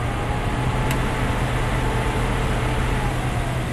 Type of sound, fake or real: real